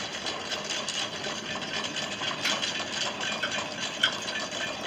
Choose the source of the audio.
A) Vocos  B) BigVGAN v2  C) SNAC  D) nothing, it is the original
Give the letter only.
D